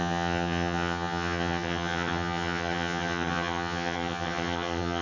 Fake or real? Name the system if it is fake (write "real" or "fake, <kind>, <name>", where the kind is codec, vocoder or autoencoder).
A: fake, vocoder, HiFi-GAN